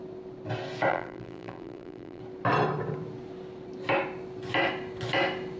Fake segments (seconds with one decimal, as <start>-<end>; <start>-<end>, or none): 0.9-2.2